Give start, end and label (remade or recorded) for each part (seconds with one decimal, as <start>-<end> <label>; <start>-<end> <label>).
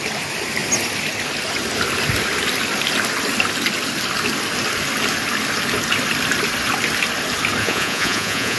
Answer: 0.0-7.6 recorded; 7.6-8.6 remade